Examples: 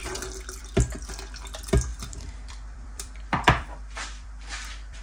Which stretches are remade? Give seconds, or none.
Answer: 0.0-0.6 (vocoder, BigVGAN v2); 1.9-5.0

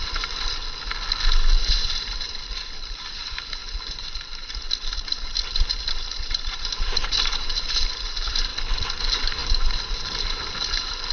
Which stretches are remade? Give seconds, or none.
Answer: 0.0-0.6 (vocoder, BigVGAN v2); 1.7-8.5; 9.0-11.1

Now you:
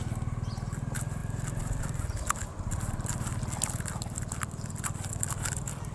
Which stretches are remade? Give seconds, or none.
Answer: none

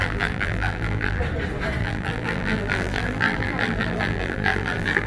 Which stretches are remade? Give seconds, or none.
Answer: 0.0-1.2 (vocoder, BigVGAN v2); 1.8-5.1

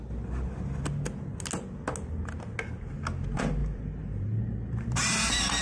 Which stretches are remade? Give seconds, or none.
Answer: 3.6-5.6 (vocoder, BigVGAN v2)